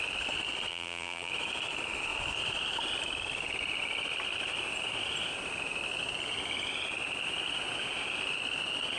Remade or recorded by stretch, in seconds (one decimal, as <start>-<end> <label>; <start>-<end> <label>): 0.0-0.7 recorded; 0.7-1.3 remade; 1.3-9.0 recorded